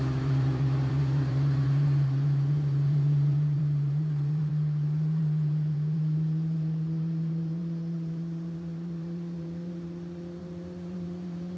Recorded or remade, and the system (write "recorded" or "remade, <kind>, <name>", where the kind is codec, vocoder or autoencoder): remade, vocoder, BigVGAN v2